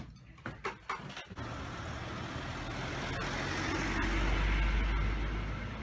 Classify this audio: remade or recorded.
recorded